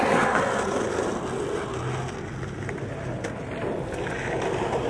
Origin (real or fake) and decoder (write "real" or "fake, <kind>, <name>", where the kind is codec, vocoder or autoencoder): real